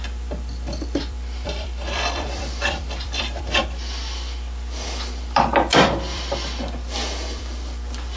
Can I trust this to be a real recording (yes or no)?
no